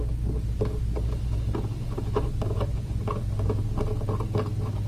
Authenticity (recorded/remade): recorded